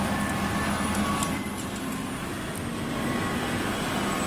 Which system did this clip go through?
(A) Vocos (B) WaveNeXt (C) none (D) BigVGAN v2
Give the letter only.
C